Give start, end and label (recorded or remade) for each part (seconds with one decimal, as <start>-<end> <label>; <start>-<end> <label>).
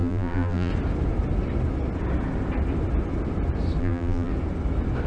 0.0-0.7 remade; 0.7-3.8 recorded; 3.8-4.3 remade; 4.3-5.1 recorded